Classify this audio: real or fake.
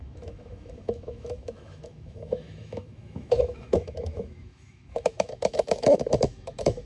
fake